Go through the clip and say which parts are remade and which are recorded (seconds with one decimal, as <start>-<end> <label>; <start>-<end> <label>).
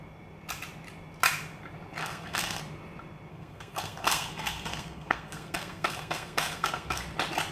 0.0-2.0 recorded; 2.0-2.6 remade; 2.6-3.3 recorded; 3.3-7.0 remade; 7.0-7.5 recorded